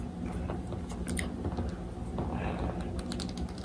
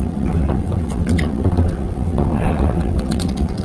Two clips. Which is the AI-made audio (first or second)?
second